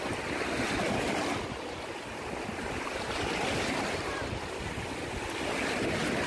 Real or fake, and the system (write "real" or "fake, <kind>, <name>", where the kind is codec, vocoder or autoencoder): real